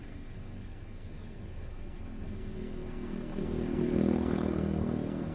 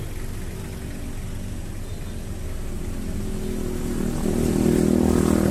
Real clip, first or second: second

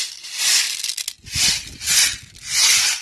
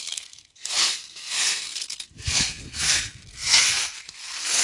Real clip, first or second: first